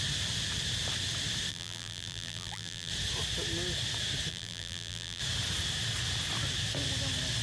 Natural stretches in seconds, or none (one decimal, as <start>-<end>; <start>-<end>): 0.0-1.5; 2.9-4.3; 5.2-7.4